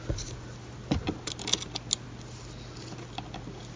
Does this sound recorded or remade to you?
recorded